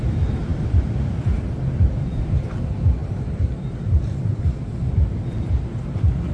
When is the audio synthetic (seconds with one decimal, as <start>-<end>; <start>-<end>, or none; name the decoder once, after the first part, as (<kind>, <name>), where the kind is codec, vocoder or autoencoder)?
0.5-2.3 (vocoder, BigVGAN v2); 3.0-4.4

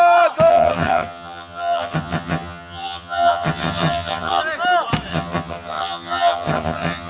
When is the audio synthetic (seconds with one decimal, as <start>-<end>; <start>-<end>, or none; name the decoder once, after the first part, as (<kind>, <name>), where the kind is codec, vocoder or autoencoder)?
0.5-4.4 (vocoder, HiFi-GAN); 5.1-7.1

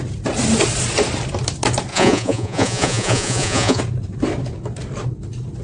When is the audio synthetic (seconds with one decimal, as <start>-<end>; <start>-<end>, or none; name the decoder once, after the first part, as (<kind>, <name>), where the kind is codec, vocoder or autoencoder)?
1.9-3.8 (vocoder, Vocos)

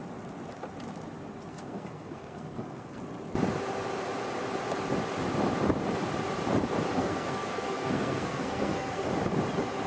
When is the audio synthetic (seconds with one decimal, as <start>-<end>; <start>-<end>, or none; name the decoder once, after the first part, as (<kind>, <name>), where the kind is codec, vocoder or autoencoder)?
1.5-3.0 (codec, SNAC); 6.9-9.1

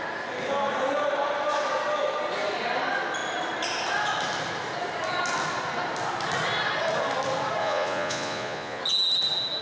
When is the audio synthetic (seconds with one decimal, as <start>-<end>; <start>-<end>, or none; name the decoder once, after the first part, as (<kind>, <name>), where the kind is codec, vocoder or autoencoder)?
7.6-8.8 (vocoder, Vocos)